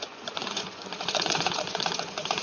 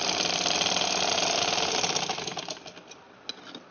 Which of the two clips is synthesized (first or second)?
first